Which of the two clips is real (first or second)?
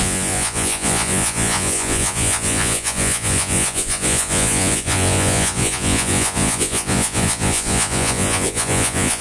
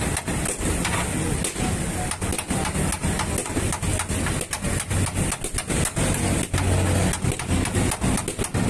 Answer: second